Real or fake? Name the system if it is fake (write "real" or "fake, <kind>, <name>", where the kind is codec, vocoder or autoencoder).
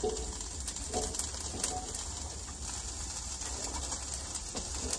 real